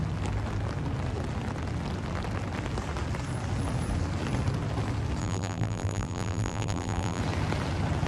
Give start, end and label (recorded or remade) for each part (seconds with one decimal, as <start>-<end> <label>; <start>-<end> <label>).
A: 0.0-5.2 recorded; 5.2-7.2 remade; 7.2-8.1 recorded